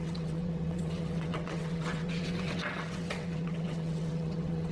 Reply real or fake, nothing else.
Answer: fake